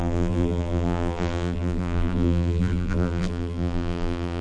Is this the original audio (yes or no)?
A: no